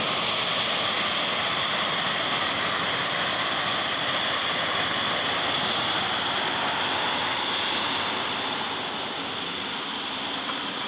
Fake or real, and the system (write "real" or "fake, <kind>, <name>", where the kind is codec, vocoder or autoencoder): real